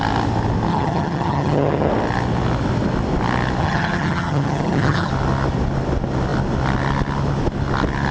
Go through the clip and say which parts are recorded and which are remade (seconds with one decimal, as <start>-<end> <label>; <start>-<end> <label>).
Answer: 0.0-0.7 recorded; 0.7-1.9 remade; 1.9-3.6 recorded; 3.6-5.1 remade; 5.1-8.1 recorded